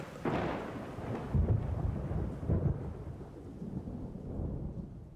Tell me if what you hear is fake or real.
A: real